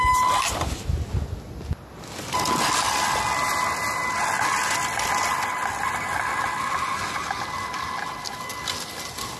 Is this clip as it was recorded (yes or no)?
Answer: yes